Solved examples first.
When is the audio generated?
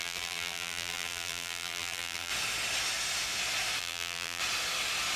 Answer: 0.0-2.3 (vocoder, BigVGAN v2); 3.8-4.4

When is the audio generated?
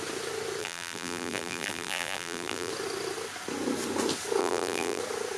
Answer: 0.6-2.7 (vocoder, BigVGAN v2); 4.4-5.0